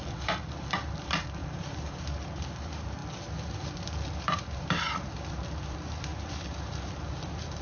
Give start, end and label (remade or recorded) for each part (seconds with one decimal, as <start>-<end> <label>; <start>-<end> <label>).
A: 0.0-3.0 remade; 3.0-4.1 recorded; 4.1-7.6 remade